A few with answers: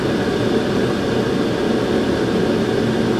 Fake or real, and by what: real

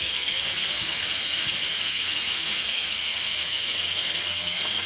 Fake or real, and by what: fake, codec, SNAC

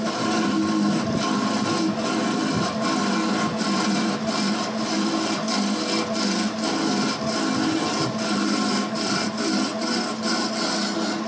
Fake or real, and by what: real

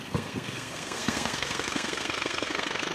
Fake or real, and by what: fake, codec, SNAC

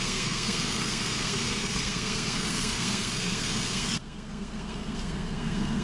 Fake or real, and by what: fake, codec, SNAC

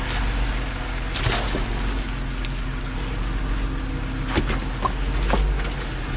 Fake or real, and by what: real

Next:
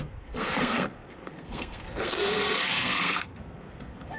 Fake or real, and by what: fake, codec, SNAC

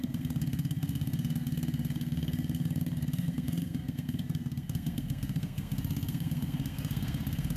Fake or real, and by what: fake, codec, SNAC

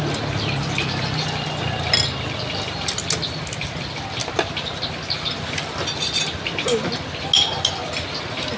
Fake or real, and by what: real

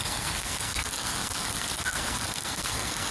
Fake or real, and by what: fake, codec, SNAC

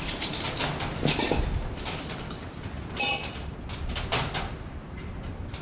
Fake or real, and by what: real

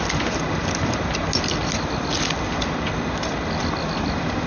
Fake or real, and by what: real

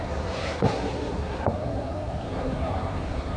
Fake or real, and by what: fake, codec, SNAC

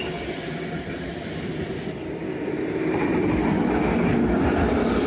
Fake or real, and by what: real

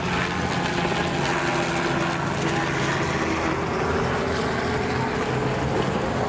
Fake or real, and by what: real